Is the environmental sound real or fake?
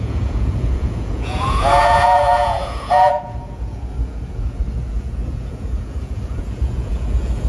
fake